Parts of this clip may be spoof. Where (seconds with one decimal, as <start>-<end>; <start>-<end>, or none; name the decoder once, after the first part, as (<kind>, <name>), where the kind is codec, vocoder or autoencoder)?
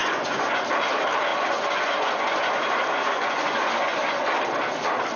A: 0.0-0.6 (vocoder, Vocos); 1.3-4.4